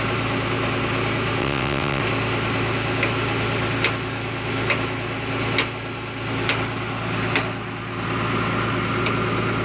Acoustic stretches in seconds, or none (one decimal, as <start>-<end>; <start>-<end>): 0.0-1.4; 2.0-9.6